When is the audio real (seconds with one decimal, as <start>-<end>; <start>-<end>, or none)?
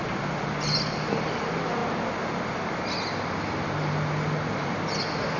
0.0-5.4